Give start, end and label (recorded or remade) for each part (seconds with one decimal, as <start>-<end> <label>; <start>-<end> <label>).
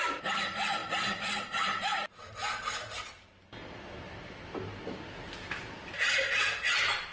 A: 0.0-7.1 recorded